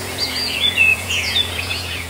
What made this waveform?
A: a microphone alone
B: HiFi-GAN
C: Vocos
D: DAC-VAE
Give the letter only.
C